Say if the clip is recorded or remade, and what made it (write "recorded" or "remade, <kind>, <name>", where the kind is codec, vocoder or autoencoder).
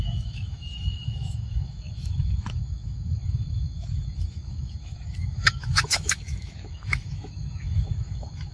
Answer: remade, autoencoder, DAC-VAE